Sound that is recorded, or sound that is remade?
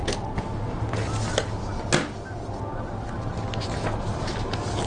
recorded